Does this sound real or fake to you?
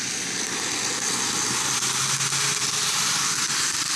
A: real